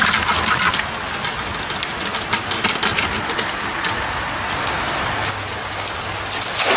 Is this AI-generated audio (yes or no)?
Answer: no